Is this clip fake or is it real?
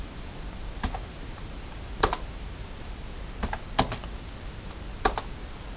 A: real